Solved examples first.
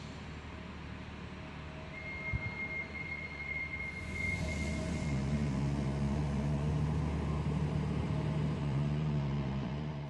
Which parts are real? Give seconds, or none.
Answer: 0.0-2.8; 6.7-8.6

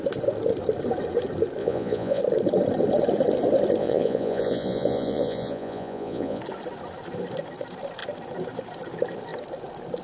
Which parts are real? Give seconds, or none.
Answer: 0.0-1.6; 2.2-3.8; 6.4-10.0

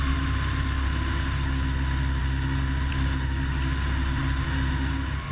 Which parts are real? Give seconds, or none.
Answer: 0.0-5.3

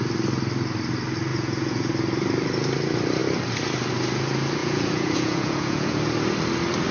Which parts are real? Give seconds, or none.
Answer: 0.0-1.3; 1.9-4.6; 6.0-6.9

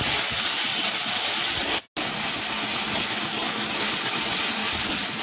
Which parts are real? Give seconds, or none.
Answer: 0.0-4.6